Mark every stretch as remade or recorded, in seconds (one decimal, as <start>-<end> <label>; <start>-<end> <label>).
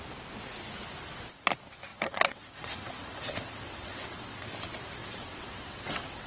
0.0-1.9 recorded; 1.9-4.5 remade; 4.5-5.0 recorded; 5.0-6.3 remade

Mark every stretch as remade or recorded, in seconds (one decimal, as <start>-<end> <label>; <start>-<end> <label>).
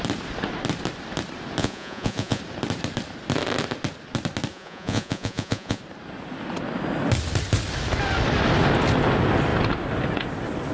0.0-1.6 recorded; 1.6-2.4 remade; 2.4-4.5 recorded; 4.5-5.8 remade; 5.8-10.7 recorded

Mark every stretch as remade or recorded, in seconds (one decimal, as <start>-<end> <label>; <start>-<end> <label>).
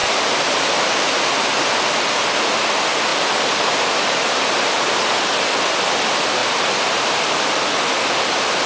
0.0-6.4 recorded; 6.4-7.2 remade; 7.2-8.7 recorded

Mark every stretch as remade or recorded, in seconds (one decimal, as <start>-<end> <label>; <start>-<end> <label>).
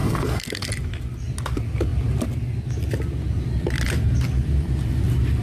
0.0-0.7 remade; 0.7-5.4 recorded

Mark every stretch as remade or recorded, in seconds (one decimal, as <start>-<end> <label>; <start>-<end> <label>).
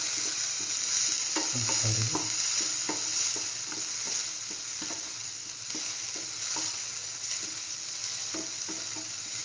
0.0-9.4 recorded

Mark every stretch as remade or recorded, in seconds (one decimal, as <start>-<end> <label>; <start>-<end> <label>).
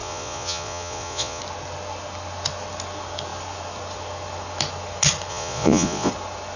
0.0-1.4 remade; 1.4-5.3 recorded; 5.3-6.1 remade; 6.1-6.6 recorded